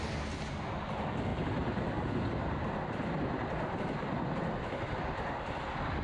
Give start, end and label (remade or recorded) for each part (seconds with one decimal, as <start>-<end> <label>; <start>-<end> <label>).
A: 0.0-6.0 recorded